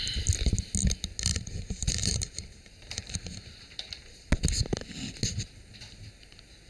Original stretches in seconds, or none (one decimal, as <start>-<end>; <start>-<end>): 0.0-1.3; 4.3-6.7